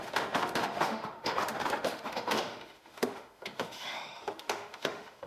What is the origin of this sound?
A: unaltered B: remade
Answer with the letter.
B